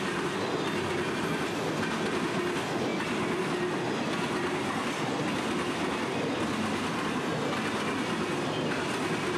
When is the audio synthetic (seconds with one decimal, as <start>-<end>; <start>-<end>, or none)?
none